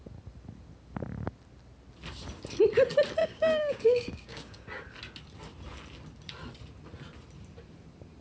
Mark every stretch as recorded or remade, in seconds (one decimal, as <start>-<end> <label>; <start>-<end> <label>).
0.0-3.2 recorded; 3.2-4.6 remade; 4.6-8.2 recorded